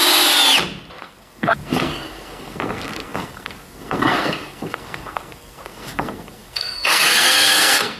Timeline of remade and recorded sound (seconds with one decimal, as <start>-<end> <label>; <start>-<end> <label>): 0.0-1.0 recorded; 1.0-8.0 remade